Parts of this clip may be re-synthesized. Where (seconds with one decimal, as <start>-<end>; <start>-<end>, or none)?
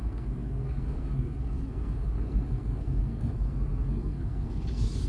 0.0-5.1